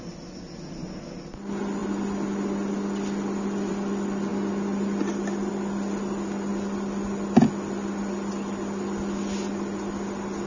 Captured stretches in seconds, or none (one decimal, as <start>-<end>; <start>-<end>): 0.0-10.5